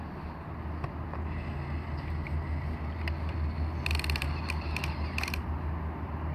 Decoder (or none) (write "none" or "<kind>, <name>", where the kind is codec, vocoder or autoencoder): none